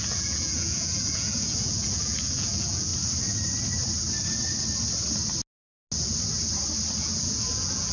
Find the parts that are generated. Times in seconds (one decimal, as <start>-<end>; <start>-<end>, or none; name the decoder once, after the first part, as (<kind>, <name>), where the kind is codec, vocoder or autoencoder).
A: 0.0-2.9 (vocoder, Vocos); 7.0-7.9